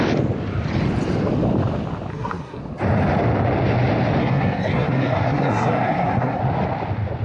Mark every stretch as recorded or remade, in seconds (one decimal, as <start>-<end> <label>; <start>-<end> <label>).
0.0-2.1 recorded; 2.1-2.6 remade; 2.6-4.2 recorded; 4.2-6.4 remade; 6.4-7.2 recorded